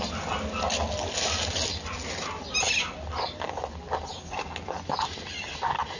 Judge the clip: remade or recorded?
recorded